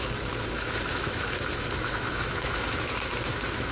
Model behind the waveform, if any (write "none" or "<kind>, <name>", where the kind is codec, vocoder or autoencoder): autoencoder, DAC-VAE